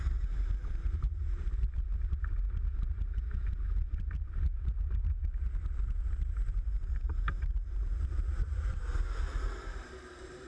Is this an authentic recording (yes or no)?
no